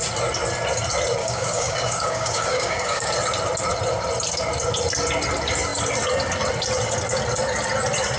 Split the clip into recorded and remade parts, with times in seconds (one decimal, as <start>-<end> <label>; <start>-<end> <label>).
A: 0.0-1.2 recorded; 1.2-3.1 remade; 3.1-8.2 recorded